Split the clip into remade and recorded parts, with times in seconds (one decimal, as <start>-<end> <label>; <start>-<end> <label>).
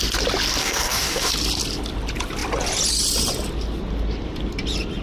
0.0-0.6 recorded; 0.6-1.3 remade; 1.3-5.0 recorded